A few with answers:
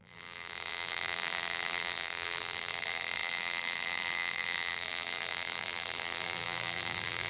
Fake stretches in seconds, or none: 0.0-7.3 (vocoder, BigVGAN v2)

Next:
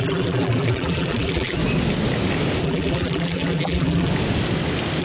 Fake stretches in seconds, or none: 0.0-1.6 (vocoder, BigVGAN v2); 2.6-4.1

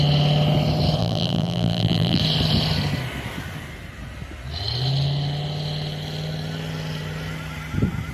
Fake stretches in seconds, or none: 1.0-2.2 (vocoder, BigVGAN v2)

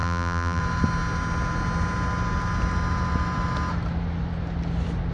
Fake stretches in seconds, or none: 0.0-0.6 (vocoder, BigVGAN v2)

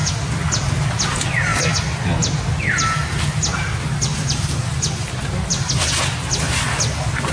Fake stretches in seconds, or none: 4.1-4.7 (vocoder, BigVGAN v2)

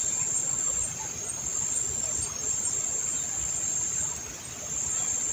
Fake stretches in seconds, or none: none

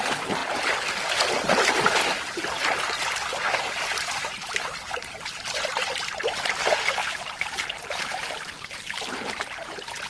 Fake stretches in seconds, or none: 7.0-10.1 (vocoder, BigVGAN v2)